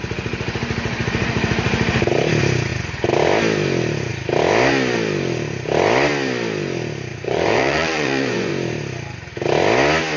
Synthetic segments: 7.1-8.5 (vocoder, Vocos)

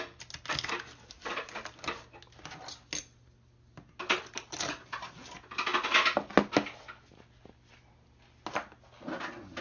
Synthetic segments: none